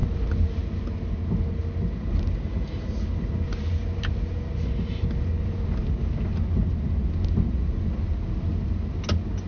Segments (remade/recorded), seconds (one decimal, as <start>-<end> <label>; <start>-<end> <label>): 0.0-9.5 recorded